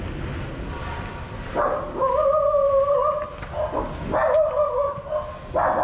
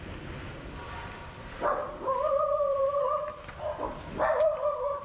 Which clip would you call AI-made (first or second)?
second